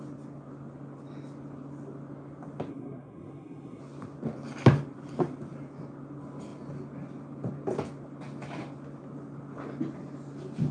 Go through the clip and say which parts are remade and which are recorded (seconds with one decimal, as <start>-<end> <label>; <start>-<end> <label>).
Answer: 0.0-2.7 recorded; 2.7-3.8 remade; 3.8-10.7 recorded